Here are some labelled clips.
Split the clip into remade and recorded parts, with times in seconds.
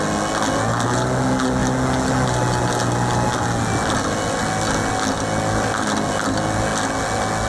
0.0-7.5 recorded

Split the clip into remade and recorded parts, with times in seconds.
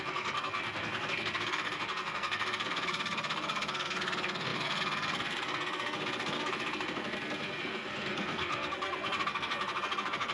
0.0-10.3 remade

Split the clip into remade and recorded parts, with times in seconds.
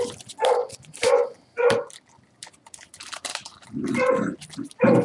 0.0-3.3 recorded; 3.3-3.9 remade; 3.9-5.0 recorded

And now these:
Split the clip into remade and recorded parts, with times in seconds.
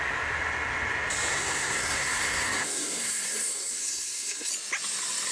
0.0-1.3 recorded; 1.3-4.5 remade; 4.5-5.3 recorded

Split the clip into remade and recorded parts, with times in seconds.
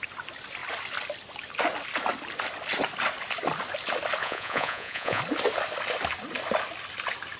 0.0-4.2 recorded; 4.2-5.2 remade; 5.2-7.4 recorded